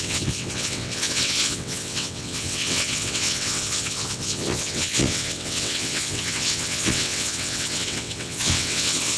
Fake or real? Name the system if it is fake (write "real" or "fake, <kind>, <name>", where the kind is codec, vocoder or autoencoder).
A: fake, vocoder, WaveNeXt